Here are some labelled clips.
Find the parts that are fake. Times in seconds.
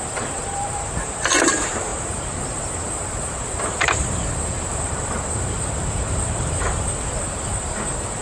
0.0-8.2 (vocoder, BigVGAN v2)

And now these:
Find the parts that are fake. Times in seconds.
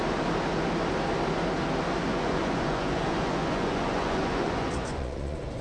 2.1-5.6 (vocoder, Vocos)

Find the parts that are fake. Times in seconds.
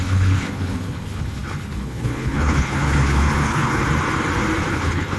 0.0-3.8 (codec, HILCodec); 4.7-5.2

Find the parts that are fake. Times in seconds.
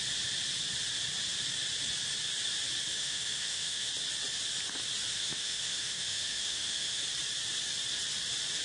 2.9-3.9 (autoencoder, DAC-VAE); 5.1-7.0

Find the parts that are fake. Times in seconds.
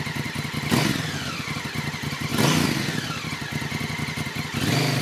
none